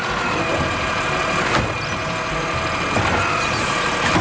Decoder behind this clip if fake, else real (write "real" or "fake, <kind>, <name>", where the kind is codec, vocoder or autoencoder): real